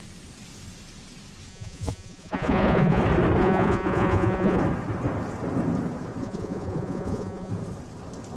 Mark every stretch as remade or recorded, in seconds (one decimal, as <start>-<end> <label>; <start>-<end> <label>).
0.0-1.5 recorded; 1.5-3.0 remade; 3.0-3.4 recorded; 3.4-4.6 remade; 4.6-6.2 recorded; 6.2-7.5 remade; 7.5-8.4 recorded